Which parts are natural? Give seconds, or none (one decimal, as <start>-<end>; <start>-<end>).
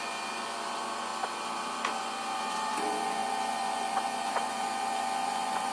1.1-2.0